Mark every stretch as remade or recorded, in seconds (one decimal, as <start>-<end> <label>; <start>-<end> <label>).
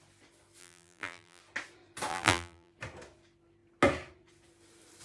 0.0-0.6 recorded; 0.6-1.4 remade; 1.4-2.1 recorded; 2.1-2.7 remade; 2.7-5.0 recorded